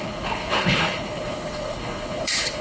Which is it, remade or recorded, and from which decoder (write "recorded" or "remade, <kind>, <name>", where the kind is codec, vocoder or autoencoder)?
remade, codec, HILCodec